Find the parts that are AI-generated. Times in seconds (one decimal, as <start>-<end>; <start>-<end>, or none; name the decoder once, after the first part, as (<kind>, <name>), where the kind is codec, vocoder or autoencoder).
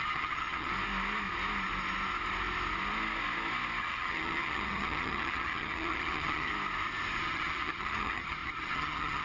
0.0-0.7 (vocoder, HiFi-GAN); 3.8-6.5; 7.2-9.2